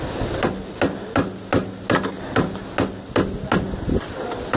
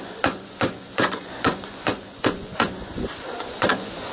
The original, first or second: first